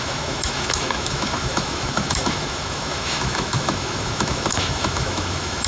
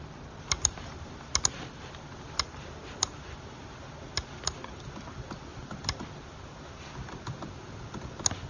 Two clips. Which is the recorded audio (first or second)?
second